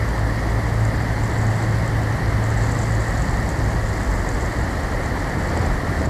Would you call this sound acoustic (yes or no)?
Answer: yes